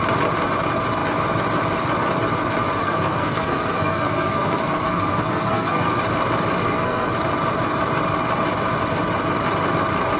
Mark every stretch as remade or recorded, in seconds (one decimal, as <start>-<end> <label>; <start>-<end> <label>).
0.0-2.8 recorded; 2.8-6.0 remade; 6.0-6.6 recorded; 6.6-7.1 remade; 7.1-10.2 recorded